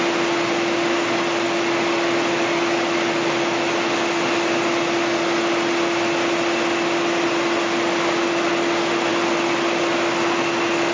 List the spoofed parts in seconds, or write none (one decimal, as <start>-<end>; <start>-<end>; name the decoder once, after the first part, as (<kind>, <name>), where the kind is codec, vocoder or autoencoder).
none